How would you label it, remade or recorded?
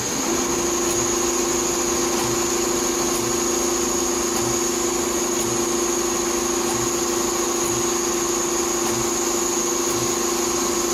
recorded